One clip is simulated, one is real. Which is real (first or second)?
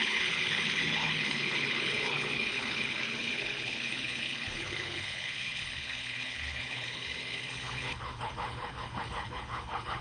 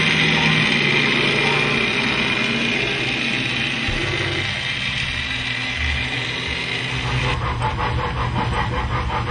second